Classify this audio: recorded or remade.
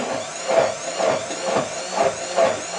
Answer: recorded